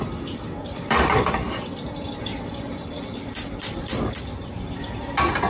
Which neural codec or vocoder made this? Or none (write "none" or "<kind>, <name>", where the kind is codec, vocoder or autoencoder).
none